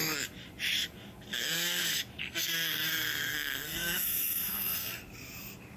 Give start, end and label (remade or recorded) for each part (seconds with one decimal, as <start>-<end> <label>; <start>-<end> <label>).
0.0-1.3 recorded; 1.3-1.8 remade; 1.8-2.2 recorded; 2.2-5.0 remade; 5.0-5.8 recorded